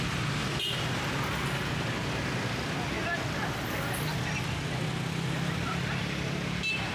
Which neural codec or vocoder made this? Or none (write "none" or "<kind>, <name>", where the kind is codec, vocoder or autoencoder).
none